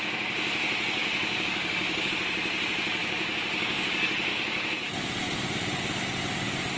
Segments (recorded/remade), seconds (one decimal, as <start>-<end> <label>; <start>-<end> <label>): 0.0-1.0 recorded; 1.0-2.1 remade; 2.1-3.0 recorded; 3.0-3.9 remade; 3.9-4.3 recorded; 4.3-4.9 remade; 4.9-6.8 recorded